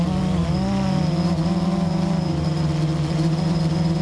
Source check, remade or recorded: recorded